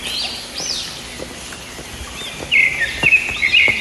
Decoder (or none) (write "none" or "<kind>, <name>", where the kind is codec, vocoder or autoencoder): none